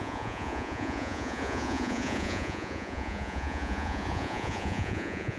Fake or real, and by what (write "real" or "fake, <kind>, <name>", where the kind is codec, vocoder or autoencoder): fake, vocoder, Vocos